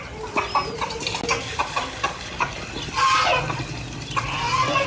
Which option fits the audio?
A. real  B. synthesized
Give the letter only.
A